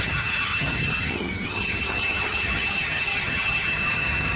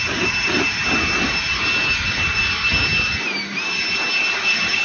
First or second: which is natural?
second